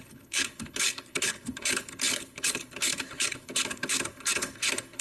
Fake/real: fake